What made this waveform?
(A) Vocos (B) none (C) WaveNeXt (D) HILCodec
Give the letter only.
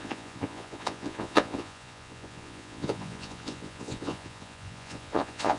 A